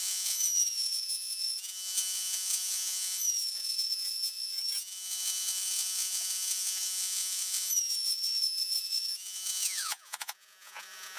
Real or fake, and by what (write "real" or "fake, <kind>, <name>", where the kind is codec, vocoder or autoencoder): fake, vocoder, Vocos